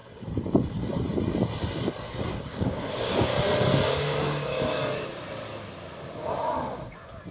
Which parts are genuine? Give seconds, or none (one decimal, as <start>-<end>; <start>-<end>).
0.0-2.4; 3.3-3.9; 4.8-7.3